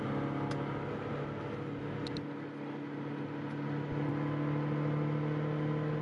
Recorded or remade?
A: recorded